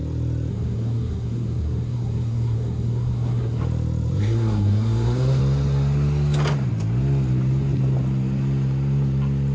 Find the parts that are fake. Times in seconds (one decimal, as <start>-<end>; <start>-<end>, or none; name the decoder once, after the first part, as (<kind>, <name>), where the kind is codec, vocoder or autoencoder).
0.5-3.6 (codec, SNAC); 4.2-5.4